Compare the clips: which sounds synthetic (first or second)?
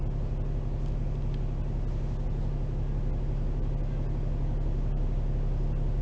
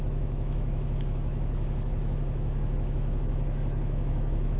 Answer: second